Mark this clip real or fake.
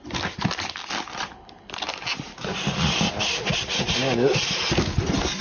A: real